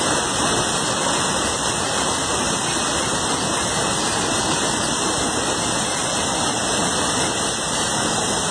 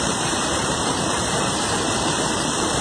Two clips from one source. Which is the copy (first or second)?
second